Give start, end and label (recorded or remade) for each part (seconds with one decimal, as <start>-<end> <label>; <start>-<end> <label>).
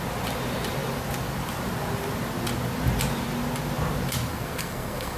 0.0-4.3 recorded; 4.3-5.2 remade